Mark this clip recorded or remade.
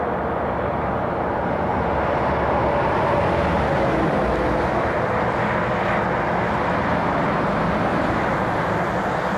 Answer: recorded